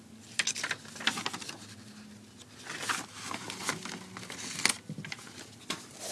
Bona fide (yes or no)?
yes